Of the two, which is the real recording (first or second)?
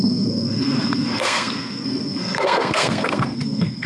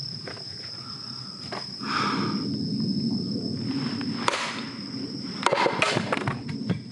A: second